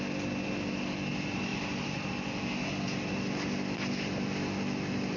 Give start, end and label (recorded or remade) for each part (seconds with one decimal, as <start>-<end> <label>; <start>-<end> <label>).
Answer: 0.0-1.5 recorded; 1.5-2.1 remade; 2.1-5.2 recorded

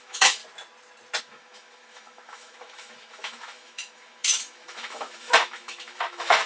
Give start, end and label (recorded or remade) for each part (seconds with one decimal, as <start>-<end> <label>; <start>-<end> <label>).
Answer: 0.0-0.4 remade; 0.4-1.2 recorded; 1.2-6.5 remade

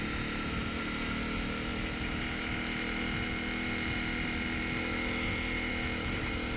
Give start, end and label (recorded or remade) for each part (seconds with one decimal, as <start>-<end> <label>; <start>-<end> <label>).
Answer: 0.0-6.6 recorded

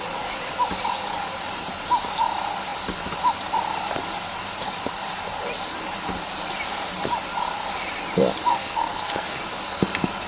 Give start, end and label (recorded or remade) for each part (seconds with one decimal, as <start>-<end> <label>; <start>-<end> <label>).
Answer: 0.0-8.5 recorded; 8.5-9.4 remade; 9.4-10.3 recorded

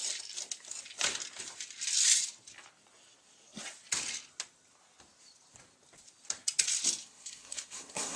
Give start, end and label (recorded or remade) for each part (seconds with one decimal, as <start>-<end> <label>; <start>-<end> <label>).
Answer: 0.0-7.0 recorded; 7.0-8.2 remade

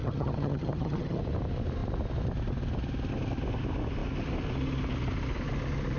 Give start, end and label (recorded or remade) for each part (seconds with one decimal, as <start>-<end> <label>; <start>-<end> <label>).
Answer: 0.0-1.2 remade; 1.2-6.0 recorded

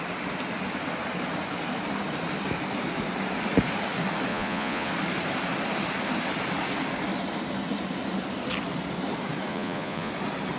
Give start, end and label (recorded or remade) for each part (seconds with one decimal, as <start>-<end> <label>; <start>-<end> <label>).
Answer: 0.0-4.3 recorded; 4.3-4.9 remade; 4.9-9.5 recorded; 9.5-10.1 remade; 10.1-10.6 recorded